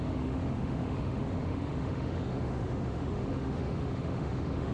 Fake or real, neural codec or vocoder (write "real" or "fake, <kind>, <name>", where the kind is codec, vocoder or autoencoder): fake, autoencoder, DAC-VAE